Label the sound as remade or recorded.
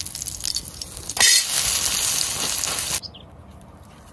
recorded